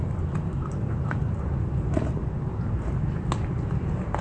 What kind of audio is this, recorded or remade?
recorded